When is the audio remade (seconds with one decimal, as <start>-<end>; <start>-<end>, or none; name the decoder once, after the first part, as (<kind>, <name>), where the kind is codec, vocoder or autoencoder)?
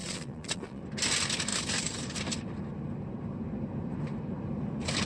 0.0-0.8 (vocoder, Vocos)